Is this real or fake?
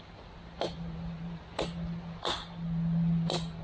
real